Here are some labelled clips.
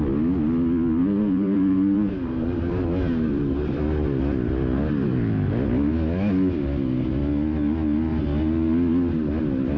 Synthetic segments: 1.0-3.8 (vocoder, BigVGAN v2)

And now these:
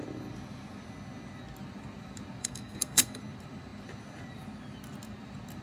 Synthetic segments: 2.4-3.2 (codec, SNAC)

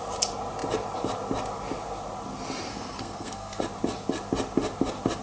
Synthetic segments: 2.7-3.6 (codec, SNAC)

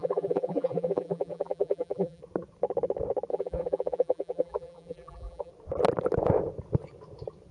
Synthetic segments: 0.0-2.2 (vocoder, BigVGAN v2); 3.3-5.5